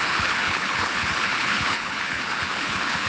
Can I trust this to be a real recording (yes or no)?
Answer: no